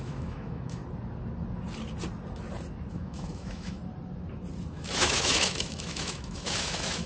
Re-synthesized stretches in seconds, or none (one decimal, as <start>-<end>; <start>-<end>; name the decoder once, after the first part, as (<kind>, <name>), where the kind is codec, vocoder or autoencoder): 0.0-0.8 (autoencoder, DAC-VAE); 2.9-3.8; 4.7-7.1